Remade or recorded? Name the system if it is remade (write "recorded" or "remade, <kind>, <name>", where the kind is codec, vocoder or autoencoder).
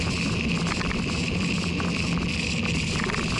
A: recorded